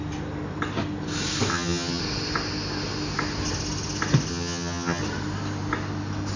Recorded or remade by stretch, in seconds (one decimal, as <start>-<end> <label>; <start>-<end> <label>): 0.0-1.5 recorded; 1.5-2.0 remade; 2.0-4.3 recorded; 4.3-5.0 remade; 5.0-6.4 recorded